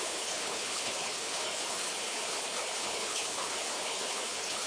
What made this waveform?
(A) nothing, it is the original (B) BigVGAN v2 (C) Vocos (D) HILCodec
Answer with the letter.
D